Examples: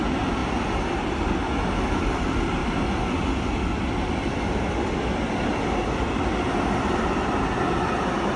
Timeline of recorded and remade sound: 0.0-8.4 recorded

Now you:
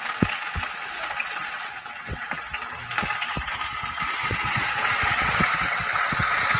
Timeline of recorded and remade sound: 0.0-2.5 remade; 2.5-4.1 recorded; 4.1-6.6 remade